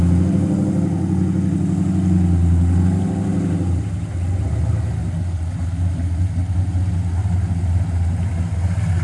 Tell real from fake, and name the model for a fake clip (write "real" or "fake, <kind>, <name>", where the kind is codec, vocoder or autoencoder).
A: real